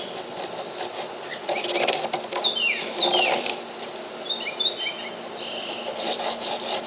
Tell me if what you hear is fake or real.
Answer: real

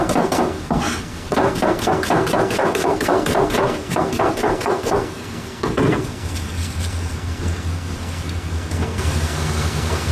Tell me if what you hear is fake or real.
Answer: fake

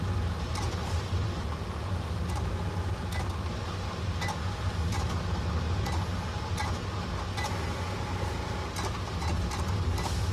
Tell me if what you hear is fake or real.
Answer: real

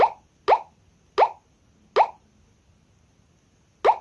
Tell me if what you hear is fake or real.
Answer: real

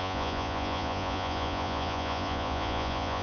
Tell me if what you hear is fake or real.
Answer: fake